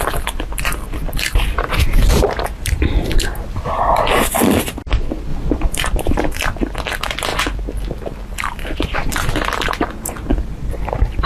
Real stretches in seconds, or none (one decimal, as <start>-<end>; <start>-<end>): 5.3-5.8; 7.3-8.4; 10.3-10.8

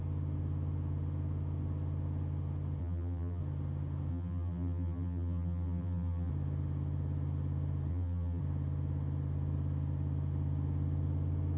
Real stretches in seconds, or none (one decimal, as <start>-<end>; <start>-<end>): 0.0-2.8; 3.4-4.1; 6.3-7.9; 8.4-11.6

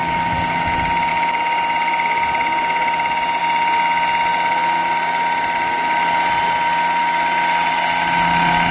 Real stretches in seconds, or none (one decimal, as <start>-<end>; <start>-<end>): 0.0-8.7

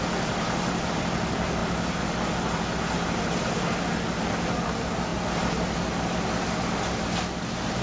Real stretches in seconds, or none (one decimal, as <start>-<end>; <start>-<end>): 0.0-7.8

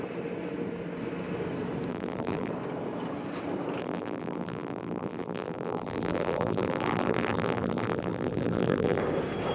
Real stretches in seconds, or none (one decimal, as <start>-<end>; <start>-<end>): 0.0-1.9; 2.5-3.8; 9.0-9.5

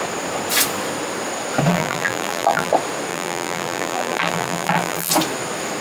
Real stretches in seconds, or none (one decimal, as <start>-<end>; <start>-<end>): 0.0-1.7; 2.7-3.1; 5.1-5.8